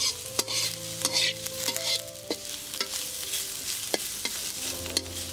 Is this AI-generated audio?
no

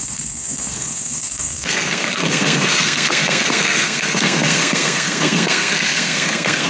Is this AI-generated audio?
yes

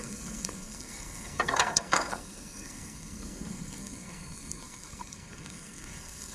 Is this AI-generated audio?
yes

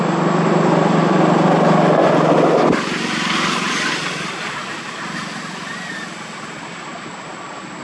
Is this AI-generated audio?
no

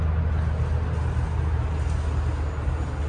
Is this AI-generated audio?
no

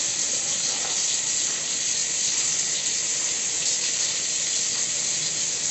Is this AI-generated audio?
no